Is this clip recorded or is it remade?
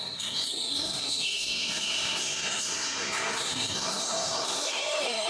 remade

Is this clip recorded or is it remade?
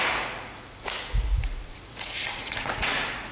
remade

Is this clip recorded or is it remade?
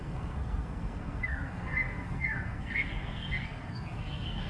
remade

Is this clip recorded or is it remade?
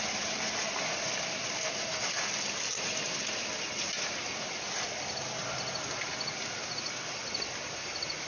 recorded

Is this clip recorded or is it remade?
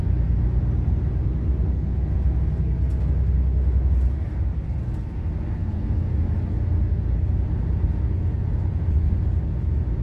recorded